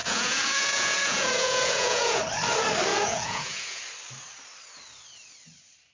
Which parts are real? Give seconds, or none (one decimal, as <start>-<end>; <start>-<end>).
2.2-2.9; 3.8-5.9